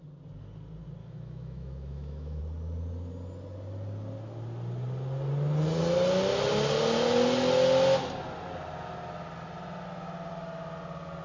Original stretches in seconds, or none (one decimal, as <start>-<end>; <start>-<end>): 0.0-1.0; 2.4-11.2